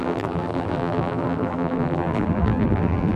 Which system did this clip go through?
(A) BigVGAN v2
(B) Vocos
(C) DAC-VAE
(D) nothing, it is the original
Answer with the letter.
A